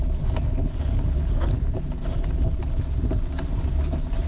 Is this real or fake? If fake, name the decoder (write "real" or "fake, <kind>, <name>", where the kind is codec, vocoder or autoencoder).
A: real